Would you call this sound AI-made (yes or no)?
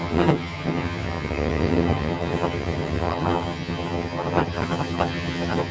yes